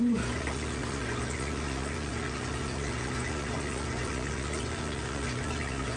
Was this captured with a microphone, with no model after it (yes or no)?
no